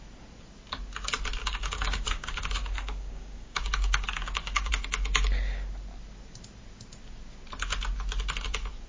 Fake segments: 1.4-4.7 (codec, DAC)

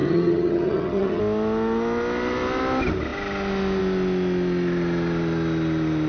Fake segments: 0.0-1.2 (vocoder, HiFi-GAN)

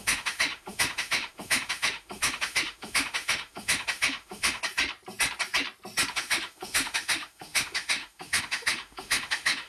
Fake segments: 0.0-4.6 (autoencoder, DAC-VAE); 6.1-9.7